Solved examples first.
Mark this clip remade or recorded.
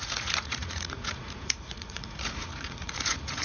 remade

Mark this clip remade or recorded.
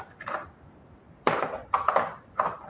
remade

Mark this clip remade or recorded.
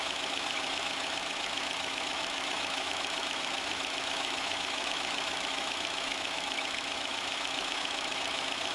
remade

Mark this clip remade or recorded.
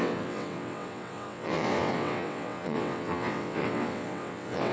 remade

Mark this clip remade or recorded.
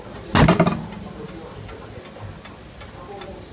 recorded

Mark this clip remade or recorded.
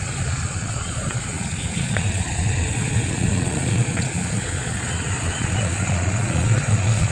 remade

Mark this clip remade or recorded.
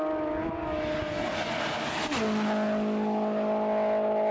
recorded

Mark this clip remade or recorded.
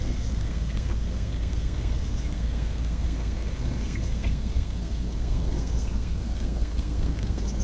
remade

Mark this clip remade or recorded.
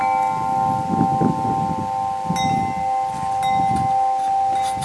recorded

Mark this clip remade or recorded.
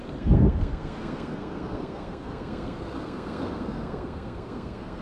remade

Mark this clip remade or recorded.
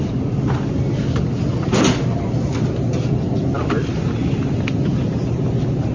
recorded